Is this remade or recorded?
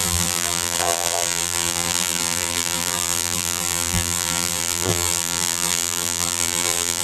remade